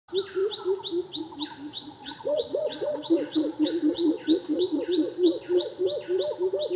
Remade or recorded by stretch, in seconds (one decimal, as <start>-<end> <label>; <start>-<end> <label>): 0.0-1.7 recorded; 1.7-5.8 remade; 5.8-6.8 recorded